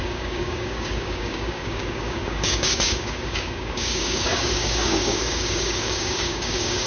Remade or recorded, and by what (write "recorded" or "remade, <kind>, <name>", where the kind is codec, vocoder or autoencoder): remade, codec, DAC